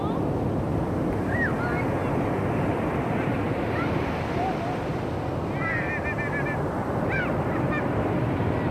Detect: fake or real real